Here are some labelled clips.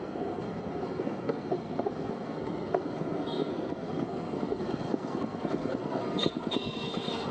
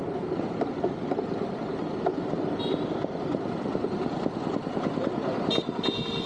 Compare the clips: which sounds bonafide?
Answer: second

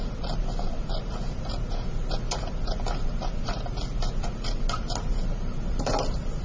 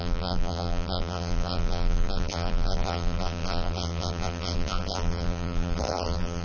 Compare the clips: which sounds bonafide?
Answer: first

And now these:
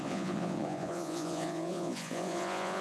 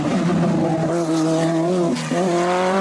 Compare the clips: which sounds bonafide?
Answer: second